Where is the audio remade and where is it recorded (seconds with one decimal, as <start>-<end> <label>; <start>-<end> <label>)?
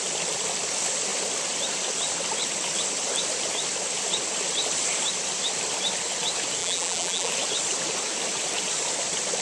0.0-6.6 recorded; 6.6-7.3 remade; 7.3-9.4 recorded